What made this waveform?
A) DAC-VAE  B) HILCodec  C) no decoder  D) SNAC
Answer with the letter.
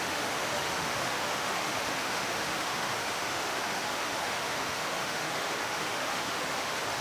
A